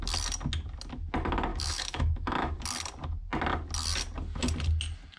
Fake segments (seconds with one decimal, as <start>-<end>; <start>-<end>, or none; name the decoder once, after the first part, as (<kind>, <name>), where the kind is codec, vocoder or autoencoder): 1.5-2.5 (autoencoder, DAC-VAE)